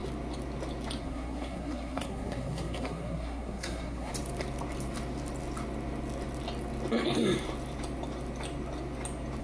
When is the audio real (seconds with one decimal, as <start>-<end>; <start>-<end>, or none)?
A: 0.0-1.0; 4.1-9.4